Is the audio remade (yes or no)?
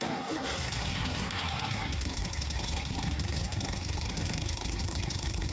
yes